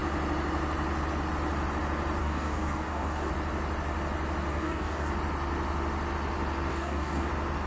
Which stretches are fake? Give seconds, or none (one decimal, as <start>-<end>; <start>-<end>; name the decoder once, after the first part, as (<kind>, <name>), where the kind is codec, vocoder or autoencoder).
2.2-3.3 (codec, DAC); 4.5-5.1; 6.7-7.3